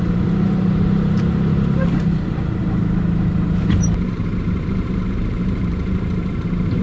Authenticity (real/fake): fake